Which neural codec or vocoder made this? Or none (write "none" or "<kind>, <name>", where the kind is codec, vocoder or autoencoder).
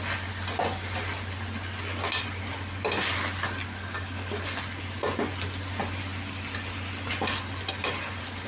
none